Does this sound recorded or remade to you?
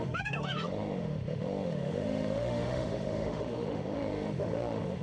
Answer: remade